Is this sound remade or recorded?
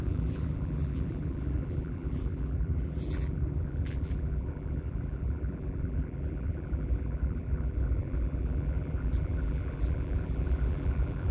remade